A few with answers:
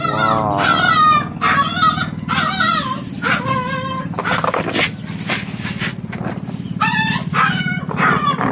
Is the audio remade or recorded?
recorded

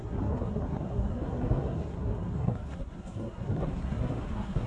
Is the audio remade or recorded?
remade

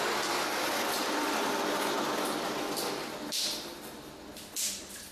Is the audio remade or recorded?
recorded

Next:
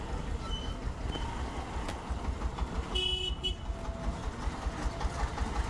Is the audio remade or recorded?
recorded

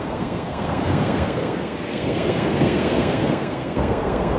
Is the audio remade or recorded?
remade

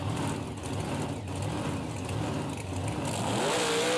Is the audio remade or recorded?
recorded